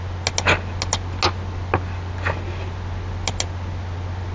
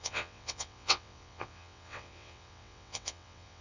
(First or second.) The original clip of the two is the first